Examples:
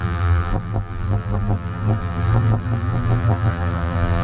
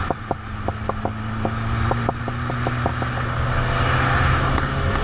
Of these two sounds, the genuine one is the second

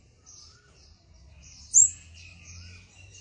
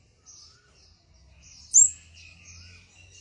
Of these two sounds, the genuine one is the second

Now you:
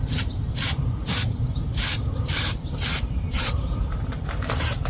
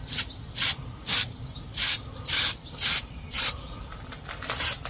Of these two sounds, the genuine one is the second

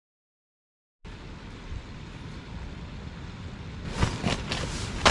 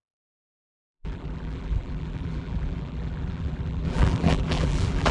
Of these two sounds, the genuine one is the first